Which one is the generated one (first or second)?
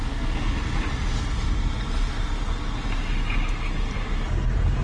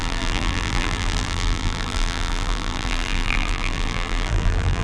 second